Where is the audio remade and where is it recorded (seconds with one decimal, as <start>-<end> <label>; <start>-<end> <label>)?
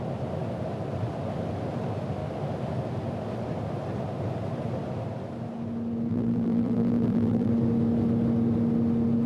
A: 0.0-6.1 recorded; 6.1-7.5 remade; 7.5-9.3 recorded